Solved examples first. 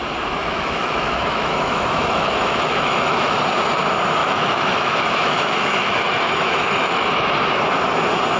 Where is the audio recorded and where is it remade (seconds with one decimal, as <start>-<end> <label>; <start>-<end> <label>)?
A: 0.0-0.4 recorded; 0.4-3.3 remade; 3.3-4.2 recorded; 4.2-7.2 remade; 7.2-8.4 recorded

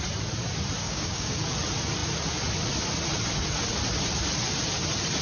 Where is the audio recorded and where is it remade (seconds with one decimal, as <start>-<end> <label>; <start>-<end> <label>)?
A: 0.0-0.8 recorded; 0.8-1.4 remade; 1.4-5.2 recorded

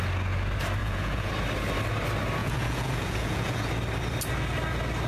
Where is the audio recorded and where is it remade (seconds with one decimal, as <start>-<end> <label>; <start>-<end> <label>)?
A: 0.0-0.8 recorded; 0.8-1.3 remade; 1.3-2.4 recorded; 2.4-3.7 remade; 3.7-5.1 recorded

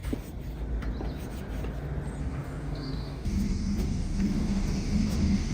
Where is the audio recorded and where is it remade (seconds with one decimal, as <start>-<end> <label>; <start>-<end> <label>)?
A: 0.0-2.2 recorded; 2.2-5.5 remade